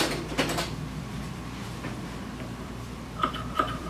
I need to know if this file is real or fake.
fake